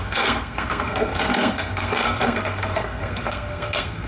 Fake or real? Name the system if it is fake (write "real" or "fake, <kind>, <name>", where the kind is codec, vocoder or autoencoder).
fake, codec, SNAC